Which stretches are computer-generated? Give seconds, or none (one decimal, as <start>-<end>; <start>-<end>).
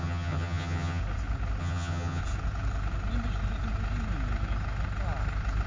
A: 0.0-1.0; 1.6-2.2